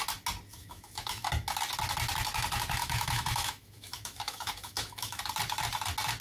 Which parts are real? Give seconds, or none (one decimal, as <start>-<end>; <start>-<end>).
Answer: 0.0-0.5; 1.3-2.8; 5.2-6.2